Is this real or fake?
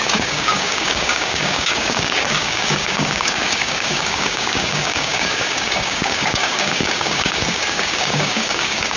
fake